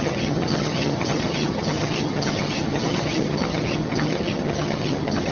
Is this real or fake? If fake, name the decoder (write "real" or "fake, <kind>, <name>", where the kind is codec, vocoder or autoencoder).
fake, vocoder, HiFi-GAN